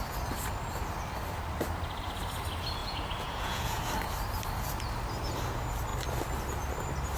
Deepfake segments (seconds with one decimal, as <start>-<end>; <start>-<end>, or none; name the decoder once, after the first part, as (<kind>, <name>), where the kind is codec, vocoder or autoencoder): 2.8-3.8 (vocoder, Vocos)